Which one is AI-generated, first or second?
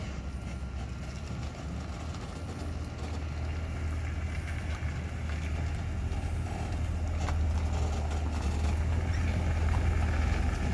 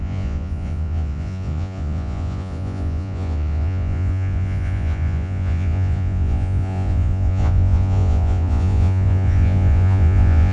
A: second